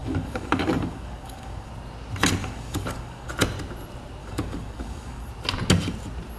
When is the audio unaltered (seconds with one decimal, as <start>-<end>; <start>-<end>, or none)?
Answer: 1.7-2.4; 3.3-4.2; 5.3-6.4